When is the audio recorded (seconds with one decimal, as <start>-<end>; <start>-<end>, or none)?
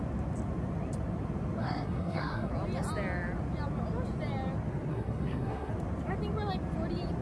0.0-1.6; 2.5-4.9; 5.7-7.2